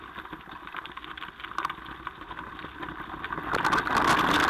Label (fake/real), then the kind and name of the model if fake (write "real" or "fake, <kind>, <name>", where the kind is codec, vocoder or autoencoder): real